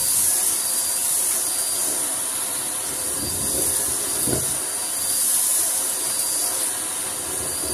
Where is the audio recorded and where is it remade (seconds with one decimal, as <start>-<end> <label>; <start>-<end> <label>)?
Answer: 0.0-0.6 recorded; 0.6-1.0 remade; 1.0-1.8 recorded; 1.8-3.9 remade; 3.9-4.9 recorded; 4.9-5.5 remade; 5.5-6.2 recorded; 6.2-7.7 remade